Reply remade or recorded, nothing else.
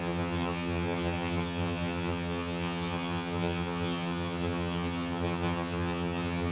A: remade